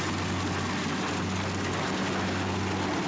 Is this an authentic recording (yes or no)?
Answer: yes